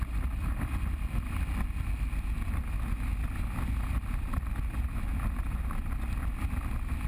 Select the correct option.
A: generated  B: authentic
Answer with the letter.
B